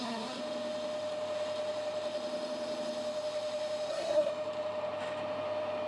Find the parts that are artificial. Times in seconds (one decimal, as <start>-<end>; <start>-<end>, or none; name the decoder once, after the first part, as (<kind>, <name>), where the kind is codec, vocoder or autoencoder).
0.0-0.4 (codec, SNAC); 3.9-4.3